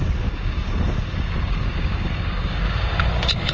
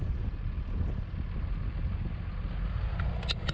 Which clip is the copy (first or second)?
first